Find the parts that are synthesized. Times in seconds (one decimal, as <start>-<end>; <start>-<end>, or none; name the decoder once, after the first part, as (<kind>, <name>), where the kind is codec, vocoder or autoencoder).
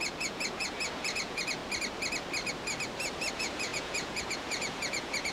0.0-1.6 (vocoder, Vocos); 3.3-5.3